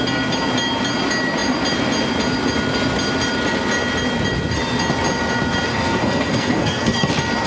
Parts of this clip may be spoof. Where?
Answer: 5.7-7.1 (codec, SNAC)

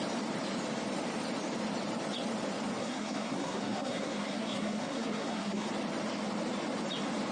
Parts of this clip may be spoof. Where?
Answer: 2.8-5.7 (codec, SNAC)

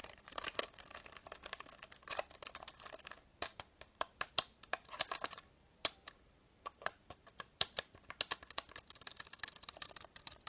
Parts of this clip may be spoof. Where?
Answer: 0.0-1.0 (vocoder, BigVGAN v2); 3.3-8.0